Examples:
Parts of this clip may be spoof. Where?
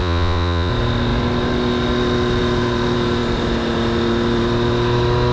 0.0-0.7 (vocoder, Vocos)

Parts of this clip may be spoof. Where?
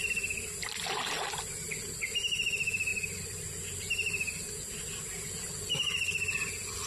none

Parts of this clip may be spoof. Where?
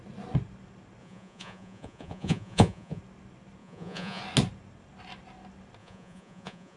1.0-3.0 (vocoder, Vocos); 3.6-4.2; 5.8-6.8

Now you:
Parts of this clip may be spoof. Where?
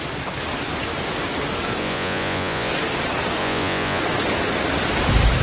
1.8-2.7 (vocoder, Vocos); 3.4-4.0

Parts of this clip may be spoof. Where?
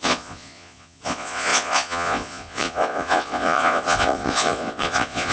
0.0-5.3 (vocoder, Vocos)